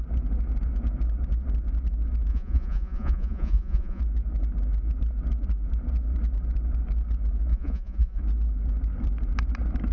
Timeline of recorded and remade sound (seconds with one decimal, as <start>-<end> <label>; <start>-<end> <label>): 0.0-2.3 recorded; 2.3-4.0 remade; 4.0-7.5 recorded; 7.5-8.2 remade; 8.2-9.9 recorded